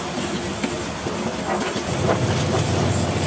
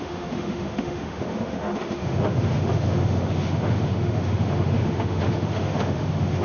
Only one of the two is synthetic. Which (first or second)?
second